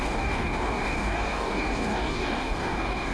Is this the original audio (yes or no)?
no